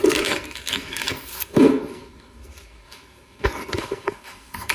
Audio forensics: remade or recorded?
remade